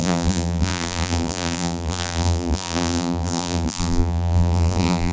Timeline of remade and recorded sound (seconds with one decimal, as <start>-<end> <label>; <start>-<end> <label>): 0.0-5.1 remade